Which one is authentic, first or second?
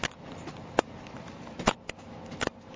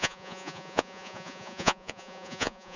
first